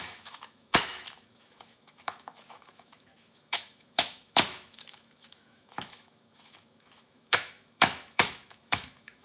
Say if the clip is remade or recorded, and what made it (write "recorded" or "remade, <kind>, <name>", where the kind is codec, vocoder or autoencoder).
remade, autoencoder, DAC-VAE